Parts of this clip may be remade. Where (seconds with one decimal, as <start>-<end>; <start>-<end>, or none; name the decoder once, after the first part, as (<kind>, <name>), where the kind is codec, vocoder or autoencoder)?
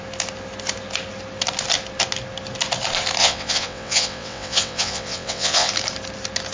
3.2-5.7 (vocoder, WaveNeXt)